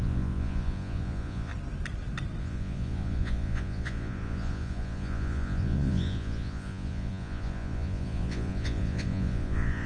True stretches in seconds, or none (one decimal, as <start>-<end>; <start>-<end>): 1.5-2.4